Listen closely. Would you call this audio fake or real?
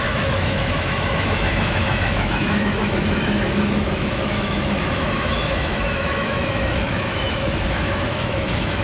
fake